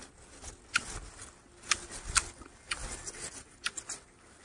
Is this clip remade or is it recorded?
recorded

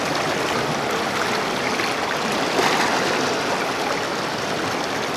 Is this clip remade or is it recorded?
recorded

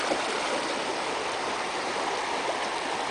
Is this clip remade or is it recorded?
recorded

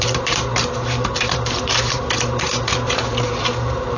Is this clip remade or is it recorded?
remade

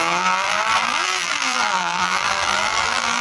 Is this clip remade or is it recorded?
remade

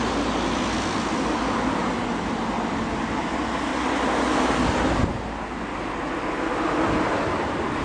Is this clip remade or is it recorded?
recorded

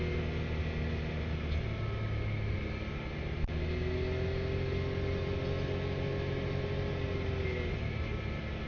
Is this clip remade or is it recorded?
recorded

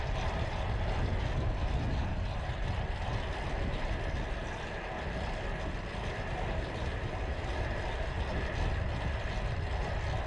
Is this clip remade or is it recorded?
recorded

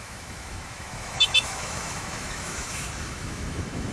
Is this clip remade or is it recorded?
remade